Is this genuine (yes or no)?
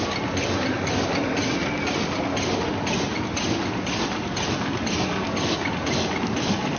yes